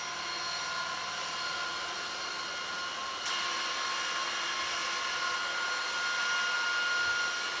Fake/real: real